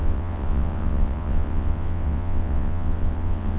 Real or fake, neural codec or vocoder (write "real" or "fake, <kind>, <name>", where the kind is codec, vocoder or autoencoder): fake, vocoder, WaveNeXt